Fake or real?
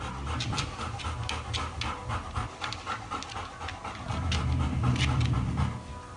real